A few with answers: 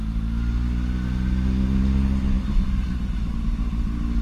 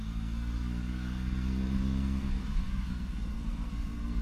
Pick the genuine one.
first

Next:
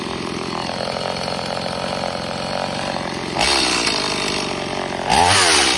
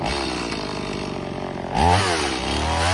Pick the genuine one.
second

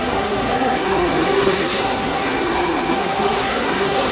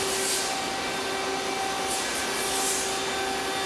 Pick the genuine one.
second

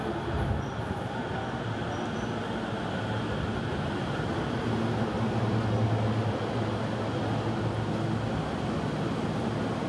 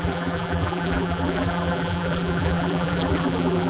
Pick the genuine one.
first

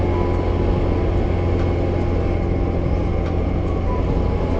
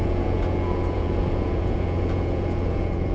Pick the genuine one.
first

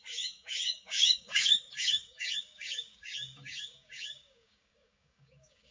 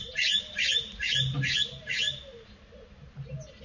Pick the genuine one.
second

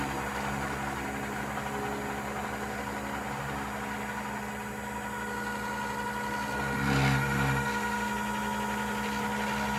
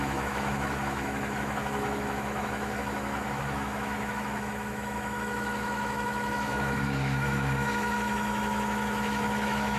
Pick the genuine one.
first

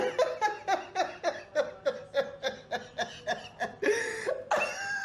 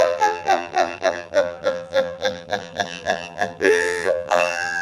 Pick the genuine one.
first